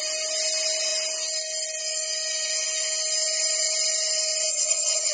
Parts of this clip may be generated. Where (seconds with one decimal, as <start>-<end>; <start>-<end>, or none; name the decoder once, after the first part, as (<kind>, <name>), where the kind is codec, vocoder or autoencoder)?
4.5-5.1 (vocoder, HiFi-GAN)